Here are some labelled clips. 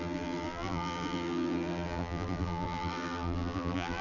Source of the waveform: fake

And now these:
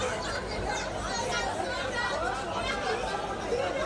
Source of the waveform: real